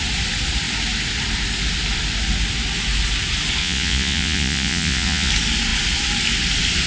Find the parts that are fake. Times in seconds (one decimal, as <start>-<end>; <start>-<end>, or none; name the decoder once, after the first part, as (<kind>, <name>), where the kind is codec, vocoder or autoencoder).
3.6-5.3 (vocoder, Vocos)